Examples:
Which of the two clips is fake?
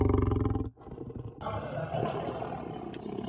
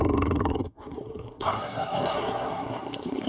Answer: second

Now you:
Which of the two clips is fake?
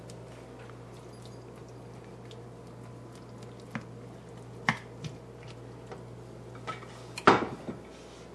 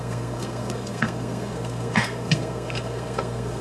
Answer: second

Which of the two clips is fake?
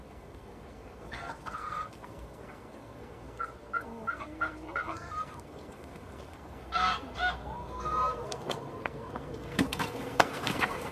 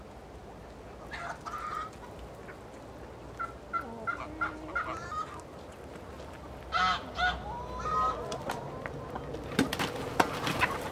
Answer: first